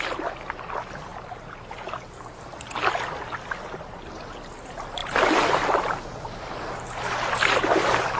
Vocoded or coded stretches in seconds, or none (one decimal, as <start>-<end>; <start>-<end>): none